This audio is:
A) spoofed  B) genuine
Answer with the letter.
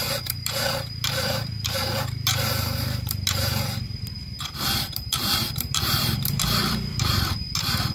A